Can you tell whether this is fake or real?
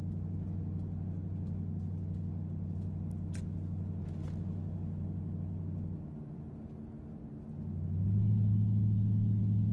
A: real